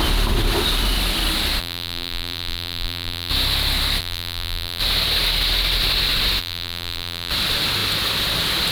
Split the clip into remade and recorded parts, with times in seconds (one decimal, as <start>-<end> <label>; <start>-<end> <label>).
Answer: 0.0-1.6 recorded; 1.6-3.3 remade; 3.3-4.0 recorded; 4.0-4.8 remade; 4.8-6.4 recorded; 6.4-7.3 remade; 7.3-8.7 recorded